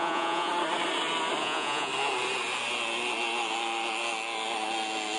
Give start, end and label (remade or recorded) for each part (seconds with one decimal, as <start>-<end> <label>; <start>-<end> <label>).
0.0-0.5 remade; 0.5-1.4 recorded; 1.4-1.9 remade; 1.9-5.2 recorded